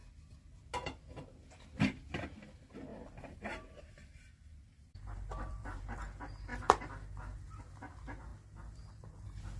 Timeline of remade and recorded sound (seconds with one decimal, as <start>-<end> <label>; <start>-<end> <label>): 0.0-2.9 recorded; 2.9-5.8 remade; 5.8-9.6 recorded